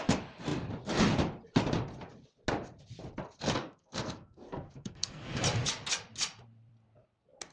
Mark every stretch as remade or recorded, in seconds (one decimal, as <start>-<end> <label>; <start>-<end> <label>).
0.0-3.6 recorded; 3.6-5.4 remade; 5.4-7.5 recorded